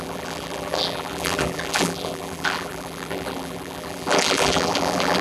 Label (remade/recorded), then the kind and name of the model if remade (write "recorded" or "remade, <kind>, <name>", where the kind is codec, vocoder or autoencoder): remade, vocoder, BigVGAN v2